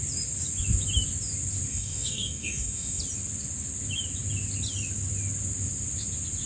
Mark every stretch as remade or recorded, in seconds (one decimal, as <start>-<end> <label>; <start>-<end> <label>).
0.0-1.7 recorded; 1.7-3.0 remade; 3.0-6.5 recorded